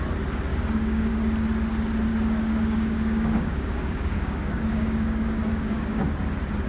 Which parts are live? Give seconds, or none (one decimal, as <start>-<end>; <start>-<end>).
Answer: 0.0-0.5; 1.1-2.1; 6.1-6.7